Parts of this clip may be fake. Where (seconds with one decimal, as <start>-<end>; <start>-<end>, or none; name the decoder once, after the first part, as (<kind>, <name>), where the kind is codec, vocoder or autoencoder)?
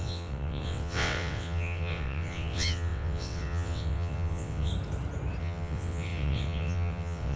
0.0-4.7 (vocoder, WaveNeXt); 5.4-7.4